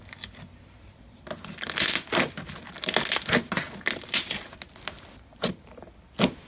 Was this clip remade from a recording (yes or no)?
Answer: no